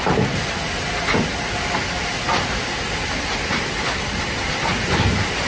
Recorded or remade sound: recorded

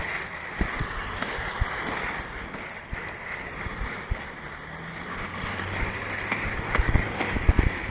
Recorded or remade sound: recorded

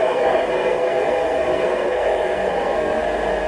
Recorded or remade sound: remade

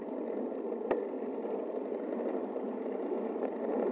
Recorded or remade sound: recorded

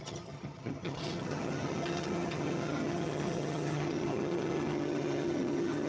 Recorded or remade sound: remade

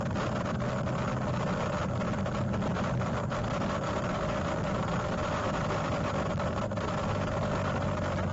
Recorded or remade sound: recorded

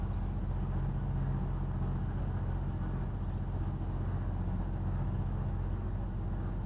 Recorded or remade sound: recorded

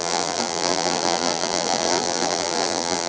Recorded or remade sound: remade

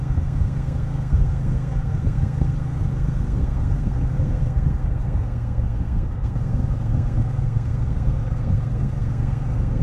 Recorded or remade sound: remade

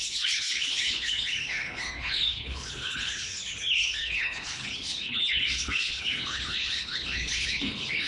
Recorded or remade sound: remade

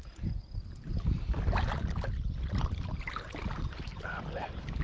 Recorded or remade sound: recorded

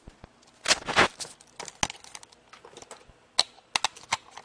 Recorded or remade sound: recorded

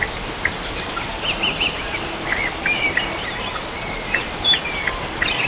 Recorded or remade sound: remade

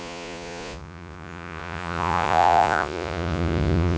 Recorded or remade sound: remade